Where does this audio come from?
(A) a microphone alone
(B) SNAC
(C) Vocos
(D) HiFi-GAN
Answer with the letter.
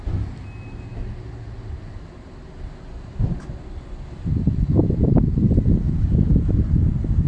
A